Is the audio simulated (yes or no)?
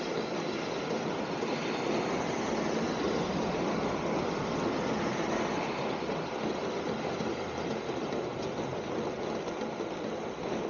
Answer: no